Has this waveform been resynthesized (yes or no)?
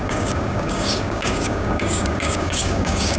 yes